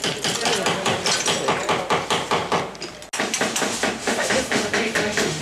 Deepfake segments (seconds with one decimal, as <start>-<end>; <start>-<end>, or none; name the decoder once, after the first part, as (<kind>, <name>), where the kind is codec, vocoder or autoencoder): 4.0-5.4 (autoencoder, DAC-VAE)